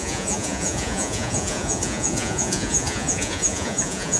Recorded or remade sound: remade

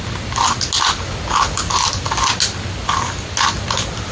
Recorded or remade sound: recorded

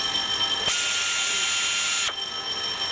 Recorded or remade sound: recorded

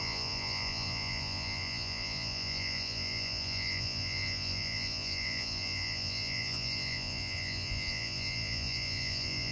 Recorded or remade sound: remade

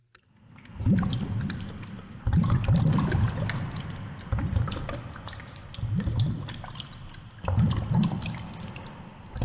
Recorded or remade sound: recorded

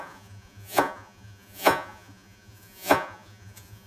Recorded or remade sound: remade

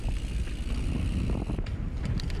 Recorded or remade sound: recorded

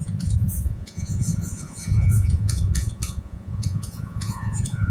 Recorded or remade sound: remade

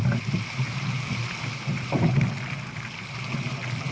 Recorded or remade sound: recorded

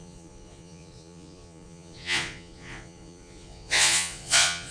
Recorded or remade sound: remade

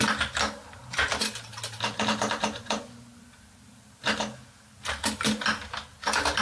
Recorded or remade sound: recorded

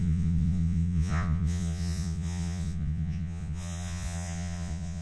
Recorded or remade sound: remade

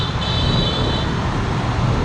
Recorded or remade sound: recorded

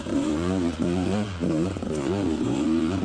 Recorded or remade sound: remade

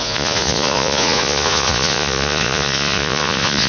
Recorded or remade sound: remade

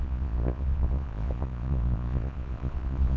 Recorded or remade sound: remade